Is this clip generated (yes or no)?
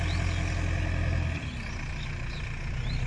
no